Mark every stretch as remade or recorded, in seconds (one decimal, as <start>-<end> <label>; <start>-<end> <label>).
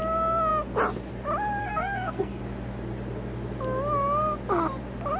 0.0-1.6 recorded; 1.6-2.4 remade; 2.4-5.2 recorded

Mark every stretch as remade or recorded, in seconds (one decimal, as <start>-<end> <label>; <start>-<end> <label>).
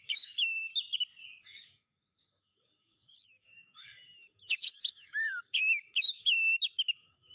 0.0-0.7 remade; 0.7-1.4 recorded; 1.4-7.3 remade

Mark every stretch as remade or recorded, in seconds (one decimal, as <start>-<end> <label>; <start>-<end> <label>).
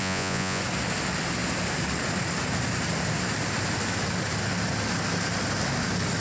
0.0-0.6 remade; 0.6-6.2 recorded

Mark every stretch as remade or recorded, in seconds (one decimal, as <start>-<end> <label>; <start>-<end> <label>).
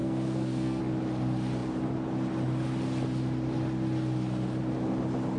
0.0-0.8 remade; 0.8-5.4 recorded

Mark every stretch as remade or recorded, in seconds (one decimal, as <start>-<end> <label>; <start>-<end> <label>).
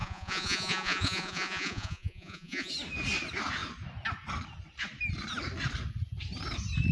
0.0-2.7 remade; 2.7-6.9 recorded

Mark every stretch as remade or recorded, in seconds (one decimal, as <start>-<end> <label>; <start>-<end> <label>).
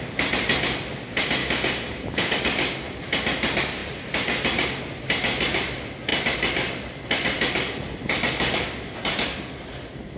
0.0-1.4 recorded; 1.4-2.4 remade; 2.4-10.2 recorded